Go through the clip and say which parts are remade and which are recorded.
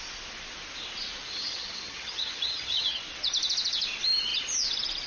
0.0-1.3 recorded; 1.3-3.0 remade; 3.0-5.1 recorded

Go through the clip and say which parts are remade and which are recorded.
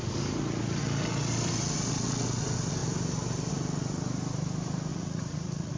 0.0-4.9 recorded; 4.9-5.8 remade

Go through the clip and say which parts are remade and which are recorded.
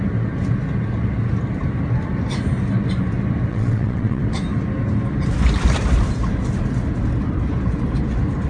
0.0-3.5 recorded; 3.5-4.2 remade; 4.2-8.5 recorded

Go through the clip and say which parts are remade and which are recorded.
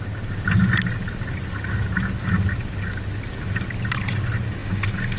0.0-5.2 recorded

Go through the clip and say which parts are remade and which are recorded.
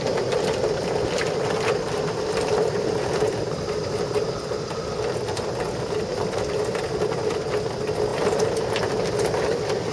0.0-6.1 recorded; 6.1-6.6 remade; 6.6-8.1 recorded; 8.1-8.7 remade; 8.7-9.9 recorded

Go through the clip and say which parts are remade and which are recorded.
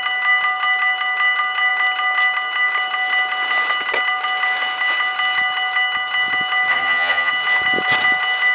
0.0-6.7 recorded; 6.7-7.3 remade; 7.3-8.5 recorded